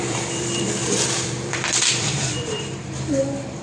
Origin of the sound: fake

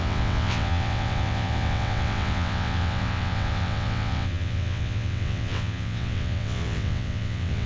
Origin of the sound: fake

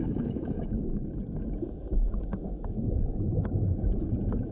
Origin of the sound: fake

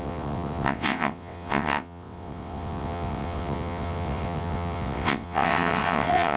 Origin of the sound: fake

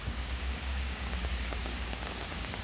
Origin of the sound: fake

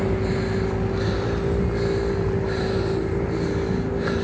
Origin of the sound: real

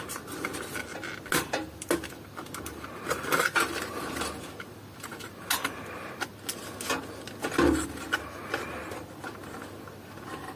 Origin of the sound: real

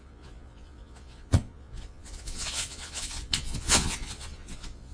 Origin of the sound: fake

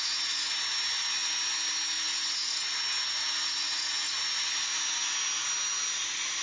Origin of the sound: real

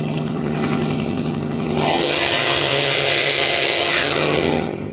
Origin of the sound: fake